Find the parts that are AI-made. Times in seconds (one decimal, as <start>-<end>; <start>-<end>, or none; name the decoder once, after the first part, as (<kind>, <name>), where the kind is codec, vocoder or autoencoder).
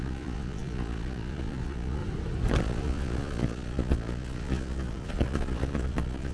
0.0-2.0 (vocoder, Vocos); 2.6-6.3